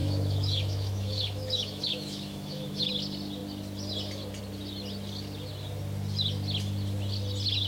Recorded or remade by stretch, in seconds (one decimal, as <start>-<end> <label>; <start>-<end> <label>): 0.0-2.9 remade; 2.9-7.7 recorded